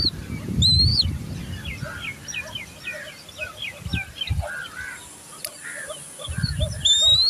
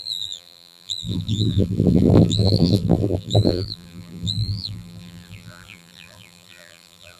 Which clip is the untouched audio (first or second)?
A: first